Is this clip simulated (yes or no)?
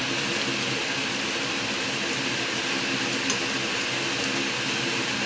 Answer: no